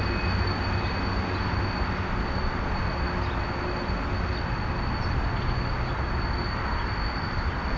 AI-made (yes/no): no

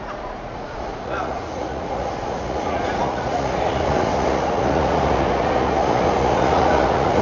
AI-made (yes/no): yes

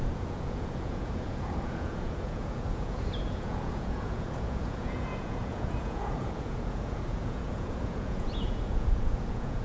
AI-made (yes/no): yes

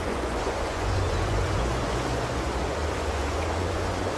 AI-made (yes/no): yes